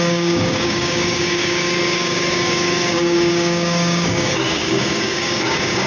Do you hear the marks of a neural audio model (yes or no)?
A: yes